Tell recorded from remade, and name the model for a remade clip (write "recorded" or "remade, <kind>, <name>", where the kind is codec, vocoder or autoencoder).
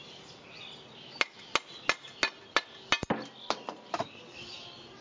recorded